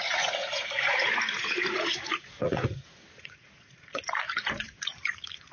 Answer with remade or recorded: remade